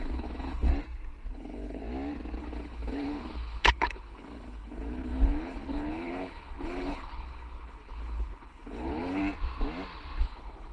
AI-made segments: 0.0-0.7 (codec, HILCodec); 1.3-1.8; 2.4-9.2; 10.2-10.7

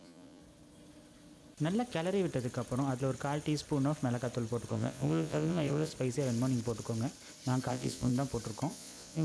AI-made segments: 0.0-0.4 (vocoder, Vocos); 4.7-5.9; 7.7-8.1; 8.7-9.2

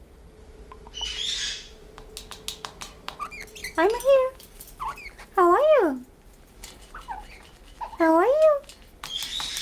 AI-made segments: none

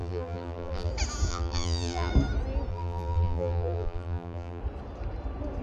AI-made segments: 0.0-0.9 (vocoder, BigVGAN v2); 1.3-2.1; 2.7-4.6

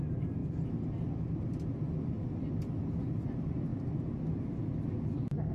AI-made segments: none

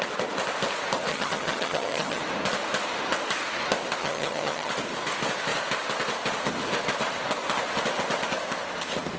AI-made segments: 1.1-2.2 (vocoder, HiFi-GAN); 4.0-4.7

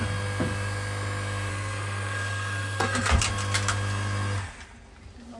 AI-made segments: 1.5-3.2 (codec, SNAC)

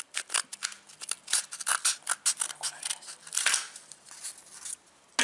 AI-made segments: none